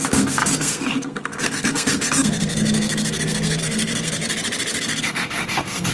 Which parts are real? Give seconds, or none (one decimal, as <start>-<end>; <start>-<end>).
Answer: 4.2-4.8

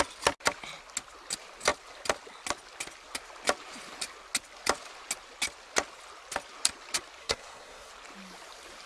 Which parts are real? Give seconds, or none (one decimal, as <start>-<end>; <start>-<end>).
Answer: 0.0-7.2; 7.9-8.9

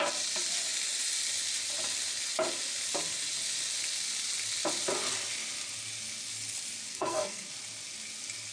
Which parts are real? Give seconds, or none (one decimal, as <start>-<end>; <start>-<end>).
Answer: 0.0-6.9; 7.5-8.5

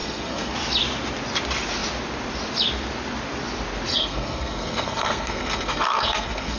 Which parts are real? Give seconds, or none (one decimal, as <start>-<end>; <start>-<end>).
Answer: 0.5-3.9

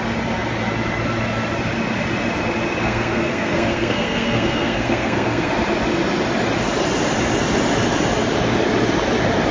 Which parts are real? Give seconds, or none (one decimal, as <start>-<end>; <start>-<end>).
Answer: 0.0-2.8; 5.5-9.5

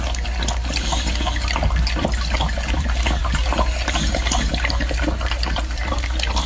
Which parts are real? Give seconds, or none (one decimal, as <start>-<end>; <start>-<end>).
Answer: 0.0-6.5

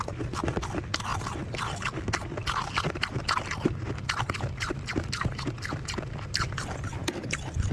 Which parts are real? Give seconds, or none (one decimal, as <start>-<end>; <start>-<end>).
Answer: 0.0-7.7